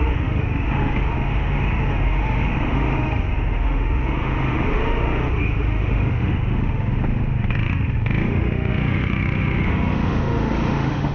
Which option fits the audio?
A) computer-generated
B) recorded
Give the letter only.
A